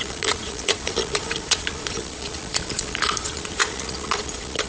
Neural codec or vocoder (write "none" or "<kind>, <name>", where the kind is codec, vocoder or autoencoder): vocoder, Vocos